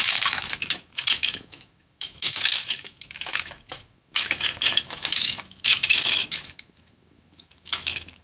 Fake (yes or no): yes